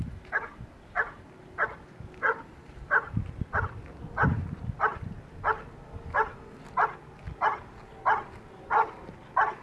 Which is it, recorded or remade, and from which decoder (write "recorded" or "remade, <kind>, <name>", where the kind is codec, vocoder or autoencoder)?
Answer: recorded